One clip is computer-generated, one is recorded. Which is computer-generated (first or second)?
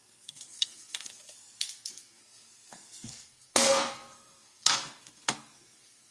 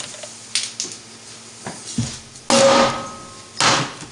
first